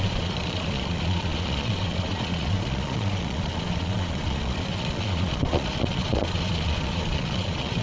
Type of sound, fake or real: fake